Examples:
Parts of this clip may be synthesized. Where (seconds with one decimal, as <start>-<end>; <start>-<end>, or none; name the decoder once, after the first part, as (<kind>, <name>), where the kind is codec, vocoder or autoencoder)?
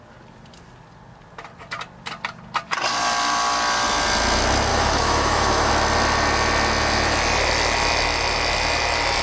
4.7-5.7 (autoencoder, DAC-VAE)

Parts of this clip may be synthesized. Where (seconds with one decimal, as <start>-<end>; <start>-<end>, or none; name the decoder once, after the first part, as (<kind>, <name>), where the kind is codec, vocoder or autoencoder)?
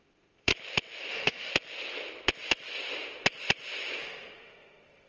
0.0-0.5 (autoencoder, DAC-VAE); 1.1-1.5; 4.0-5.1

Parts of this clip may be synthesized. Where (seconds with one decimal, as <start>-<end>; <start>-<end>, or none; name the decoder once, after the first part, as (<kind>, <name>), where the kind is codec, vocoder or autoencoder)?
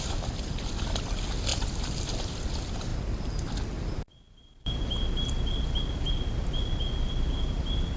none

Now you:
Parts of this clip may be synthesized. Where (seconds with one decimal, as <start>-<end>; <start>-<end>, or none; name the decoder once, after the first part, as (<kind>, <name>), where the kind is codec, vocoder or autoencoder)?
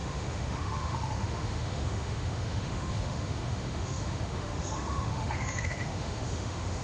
0.0-6.8 (autoencoder, DAC-VAE)